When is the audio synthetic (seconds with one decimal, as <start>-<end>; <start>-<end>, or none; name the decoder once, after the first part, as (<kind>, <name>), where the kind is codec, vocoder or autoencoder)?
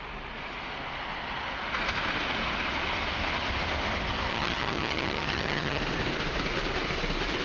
4.3-5.8 (vocoder, HiFi-GAN)